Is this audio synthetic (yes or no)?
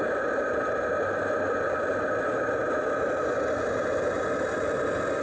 no